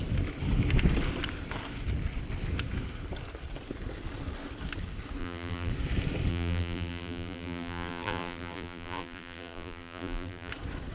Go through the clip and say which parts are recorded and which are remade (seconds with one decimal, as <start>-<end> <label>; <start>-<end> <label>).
0.0-5.2 recorded; 5.2-5.7 remade; 5.7-6.3 recorded; 6.3-10.5 remade; 10.5-10.9 recorded

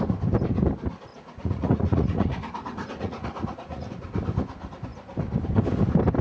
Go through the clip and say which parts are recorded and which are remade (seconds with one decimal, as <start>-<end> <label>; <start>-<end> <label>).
0.0-1.1 recorded; 1.1-3.9 remade; 3.9-6.2 recorded